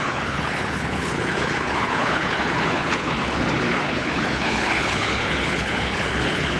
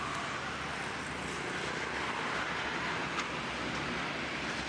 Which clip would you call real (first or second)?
second